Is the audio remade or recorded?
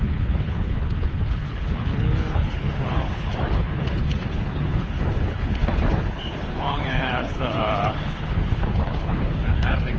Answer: remade